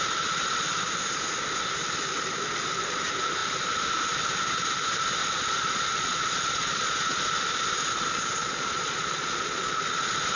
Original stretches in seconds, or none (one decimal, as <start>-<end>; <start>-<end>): 0.0-5.2; 7.2-8.4; 9.8-10.4